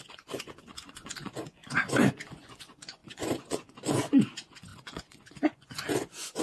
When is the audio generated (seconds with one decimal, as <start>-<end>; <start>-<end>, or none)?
0.0-1.6; 2.1-6.4